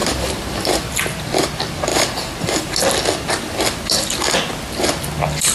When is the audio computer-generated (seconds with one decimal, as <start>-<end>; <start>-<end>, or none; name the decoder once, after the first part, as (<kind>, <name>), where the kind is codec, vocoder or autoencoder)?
0.0-0.9 (vocoder, BigVGAN v2); 1.9-2.7